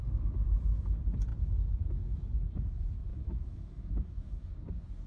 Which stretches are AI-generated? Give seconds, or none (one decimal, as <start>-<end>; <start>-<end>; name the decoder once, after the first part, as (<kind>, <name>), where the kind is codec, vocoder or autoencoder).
3.1-4.5 (autoencoder, DAC-VAE)

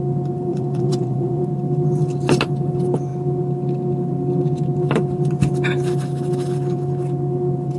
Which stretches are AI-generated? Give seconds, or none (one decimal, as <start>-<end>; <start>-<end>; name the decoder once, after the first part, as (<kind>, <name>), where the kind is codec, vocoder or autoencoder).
0.5-1.4 (vocoder, Vocos)

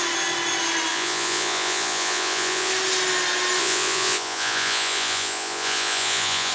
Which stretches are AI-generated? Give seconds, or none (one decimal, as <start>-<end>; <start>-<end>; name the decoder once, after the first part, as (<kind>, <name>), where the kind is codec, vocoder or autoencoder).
0.9-2.7 (vocoder, Vocos); 3.6-6.5

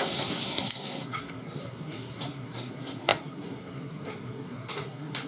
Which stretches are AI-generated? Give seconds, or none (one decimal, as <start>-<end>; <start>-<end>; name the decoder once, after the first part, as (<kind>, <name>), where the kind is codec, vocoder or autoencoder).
0.0-5.3 (codec, SNAC)

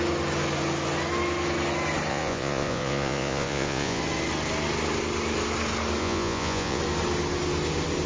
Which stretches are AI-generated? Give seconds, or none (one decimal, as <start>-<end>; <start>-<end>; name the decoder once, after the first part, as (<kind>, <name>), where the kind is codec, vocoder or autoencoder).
2.1-4.0 (vocoder, Vocos); 6.0-6.8

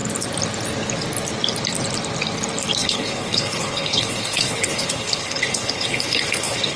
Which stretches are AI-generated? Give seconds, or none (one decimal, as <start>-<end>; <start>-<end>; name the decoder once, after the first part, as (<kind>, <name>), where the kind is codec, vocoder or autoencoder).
2.8-6.8 (codec, HILCodec)

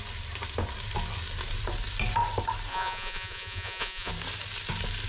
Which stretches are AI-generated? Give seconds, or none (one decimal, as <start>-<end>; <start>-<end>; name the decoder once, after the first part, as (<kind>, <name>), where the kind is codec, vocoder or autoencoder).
2.7-4.1 (vocoder, Vocos)